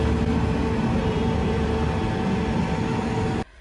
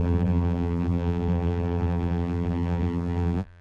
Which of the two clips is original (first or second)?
first